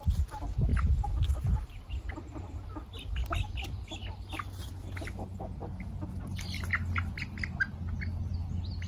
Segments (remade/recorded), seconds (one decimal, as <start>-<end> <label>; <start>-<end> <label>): 0.0-0.7 recorded; 0.7-2.6 remade; 2.6-8.9 recorded